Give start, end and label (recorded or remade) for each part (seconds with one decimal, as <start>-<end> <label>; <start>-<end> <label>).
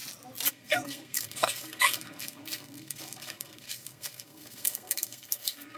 0.0-0.5 recorded; 0.5-5.8 remade